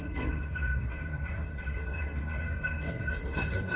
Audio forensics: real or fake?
fake